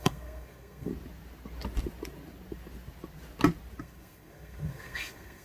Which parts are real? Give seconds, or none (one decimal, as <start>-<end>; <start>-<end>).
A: 0.9-3.8